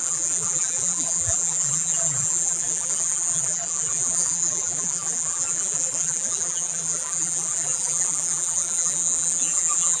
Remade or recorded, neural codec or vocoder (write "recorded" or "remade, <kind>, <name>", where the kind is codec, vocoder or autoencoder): remade, vocoder, BigVGAN v2